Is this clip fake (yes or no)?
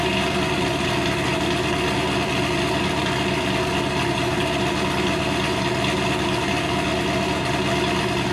no